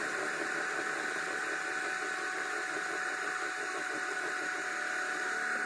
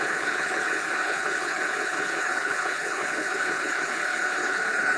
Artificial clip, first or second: second